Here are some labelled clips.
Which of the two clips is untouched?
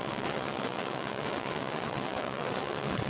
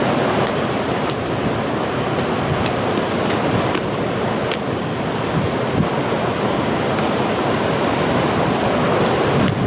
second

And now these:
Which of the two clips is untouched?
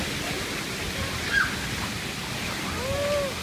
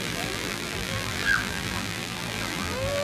first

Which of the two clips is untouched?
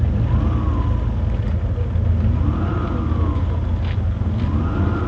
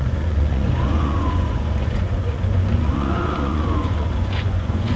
first